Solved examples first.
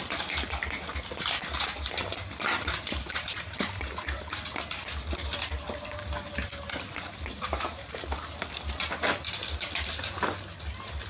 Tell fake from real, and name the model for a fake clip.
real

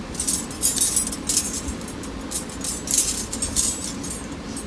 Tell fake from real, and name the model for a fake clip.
real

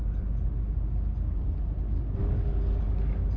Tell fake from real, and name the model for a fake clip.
real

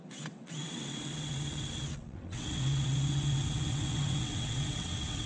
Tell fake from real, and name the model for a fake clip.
fake, vocoder, WaveNeXt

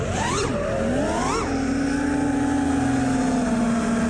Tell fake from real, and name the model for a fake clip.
real